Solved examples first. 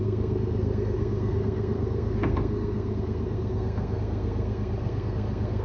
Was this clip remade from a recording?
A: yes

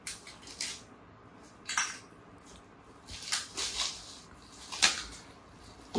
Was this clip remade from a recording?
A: no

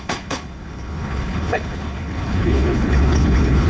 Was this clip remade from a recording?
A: yes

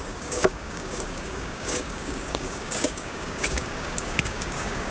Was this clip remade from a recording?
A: yes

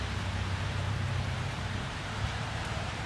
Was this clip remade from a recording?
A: yes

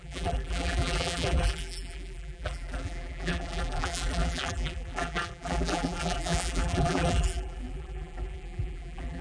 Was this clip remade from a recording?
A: yes